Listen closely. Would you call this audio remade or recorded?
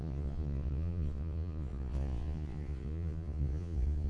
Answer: remade